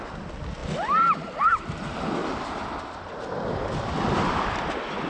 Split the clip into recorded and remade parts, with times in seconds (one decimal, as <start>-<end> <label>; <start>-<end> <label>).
0.0-5.1 recorded